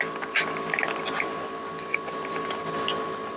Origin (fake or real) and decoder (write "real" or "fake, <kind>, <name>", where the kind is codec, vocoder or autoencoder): real